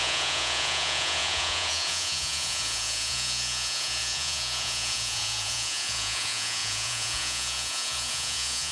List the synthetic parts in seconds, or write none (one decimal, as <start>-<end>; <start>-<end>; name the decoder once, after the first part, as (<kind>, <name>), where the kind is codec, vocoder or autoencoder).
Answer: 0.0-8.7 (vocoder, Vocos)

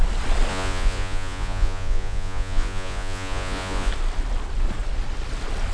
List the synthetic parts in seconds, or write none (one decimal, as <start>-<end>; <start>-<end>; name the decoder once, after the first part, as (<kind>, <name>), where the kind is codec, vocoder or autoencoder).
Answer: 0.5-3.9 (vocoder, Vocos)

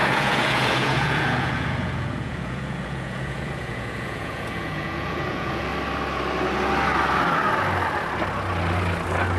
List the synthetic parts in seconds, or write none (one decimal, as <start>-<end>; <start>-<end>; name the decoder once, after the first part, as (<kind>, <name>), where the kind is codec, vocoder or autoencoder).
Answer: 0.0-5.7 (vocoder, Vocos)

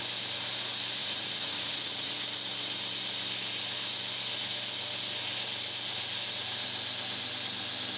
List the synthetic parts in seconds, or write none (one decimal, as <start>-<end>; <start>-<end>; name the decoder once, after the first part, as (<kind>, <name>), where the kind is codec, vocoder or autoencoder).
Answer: 1.0-2.2 (vocoder, Vocos)

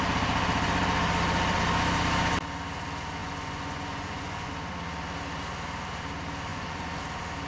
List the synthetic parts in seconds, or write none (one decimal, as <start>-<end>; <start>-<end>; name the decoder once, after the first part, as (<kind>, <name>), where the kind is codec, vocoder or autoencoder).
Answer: 3.2-4.5 (vocoder, Vocos); 6.5-7.0

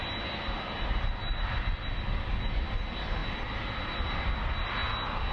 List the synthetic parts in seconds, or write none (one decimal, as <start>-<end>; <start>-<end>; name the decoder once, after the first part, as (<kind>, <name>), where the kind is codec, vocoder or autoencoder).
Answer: none

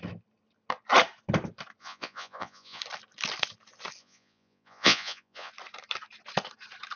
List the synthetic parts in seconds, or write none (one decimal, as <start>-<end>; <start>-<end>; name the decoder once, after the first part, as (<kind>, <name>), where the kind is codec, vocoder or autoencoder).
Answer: 1.8-2.8 (vocoder, Vocos); 4.0-5.5